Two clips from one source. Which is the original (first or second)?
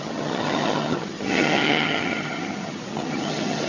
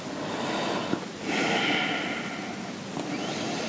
second